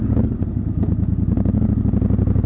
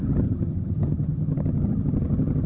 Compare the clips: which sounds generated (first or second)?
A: second